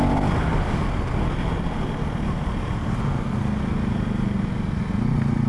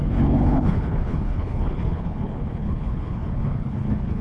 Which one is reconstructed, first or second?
second